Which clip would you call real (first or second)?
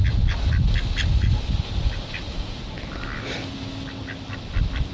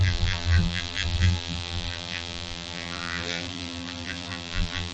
first